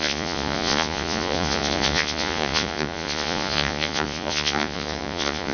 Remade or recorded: remade